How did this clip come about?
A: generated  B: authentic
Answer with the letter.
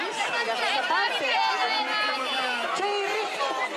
B